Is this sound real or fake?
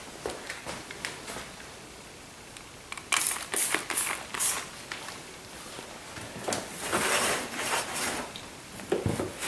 real